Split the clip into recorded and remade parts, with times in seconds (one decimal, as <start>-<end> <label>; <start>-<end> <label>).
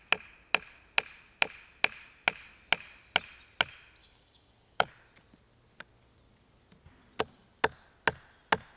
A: 0.0-4.0 recorded; 4.0-4.9 remade; 4.9-8.8 recorded